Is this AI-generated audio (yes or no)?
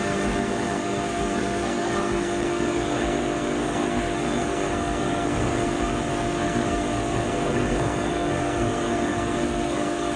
yes